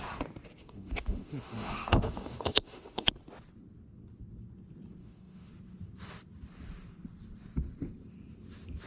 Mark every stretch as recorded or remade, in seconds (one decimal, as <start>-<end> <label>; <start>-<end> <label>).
0.0-0.6 recorded; 0.6-3.1 remade; 3.1-5.0 recorded; 5.0-5.5 remade; 5.5-8.9 recorded